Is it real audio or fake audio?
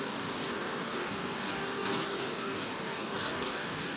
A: fake